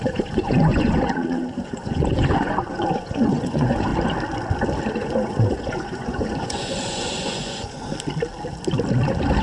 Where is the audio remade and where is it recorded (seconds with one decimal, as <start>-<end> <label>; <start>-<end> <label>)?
0.0-3.9 remade; 3.9-4.9 recorded; 4.9-7.9 remade; 7.9-9.4 recorded